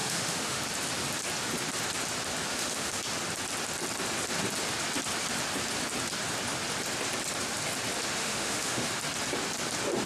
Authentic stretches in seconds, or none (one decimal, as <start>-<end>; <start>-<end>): 0.6-2.5; 3.0-8.2; 8.9-10.1